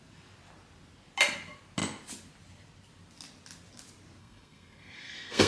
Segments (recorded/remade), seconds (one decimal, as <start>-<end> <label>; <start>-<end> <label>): 0.0-4.2 recorded; 4.2-5.5 remade